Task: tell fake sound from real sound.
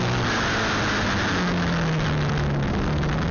real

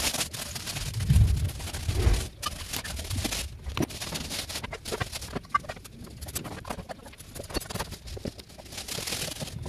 real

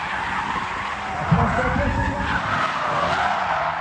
real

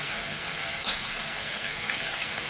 fake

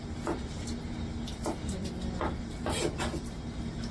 fake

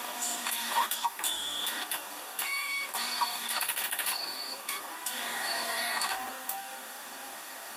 fake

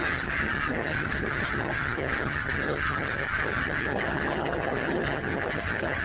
fake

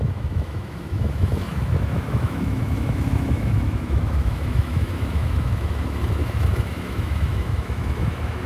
fake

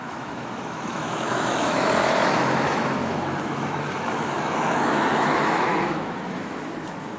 fake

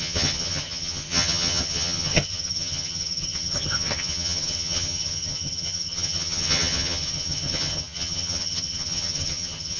fake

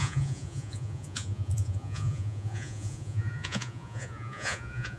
fake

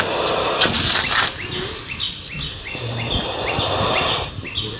real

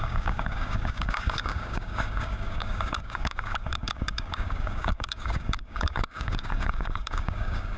fake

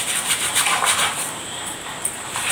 fake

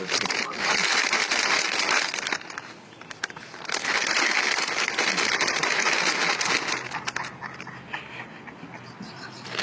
real